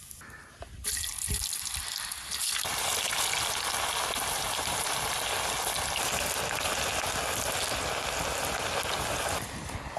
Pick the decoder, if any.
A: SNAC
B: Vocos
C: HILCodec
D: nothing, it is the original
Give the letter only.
D